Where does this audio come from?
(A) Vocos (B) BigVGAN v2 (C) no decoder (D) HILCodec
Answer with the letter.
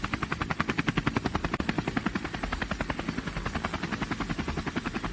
C